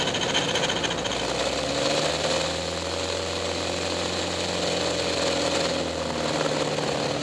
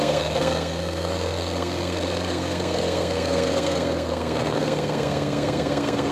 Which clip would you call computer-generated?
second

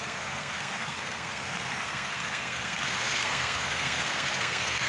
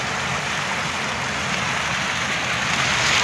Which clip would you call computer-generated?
first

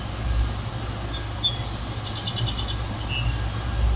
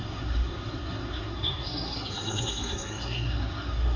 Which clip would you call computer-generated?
second